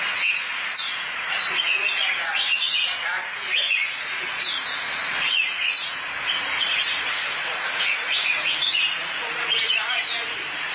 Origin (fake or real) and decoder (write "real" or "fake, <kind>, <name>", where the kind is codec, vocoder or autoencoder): fake, vocoder, Vocos